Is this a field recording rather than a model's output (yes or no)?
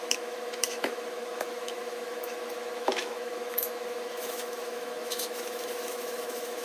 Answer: no